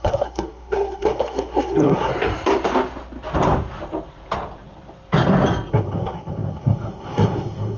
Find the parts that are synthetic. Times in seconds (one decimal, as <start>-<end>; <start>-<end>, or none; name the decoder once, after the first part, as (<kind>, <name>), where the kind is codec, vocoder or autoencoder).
0.0-2.1 (codec, SNAC); 5.7-7.8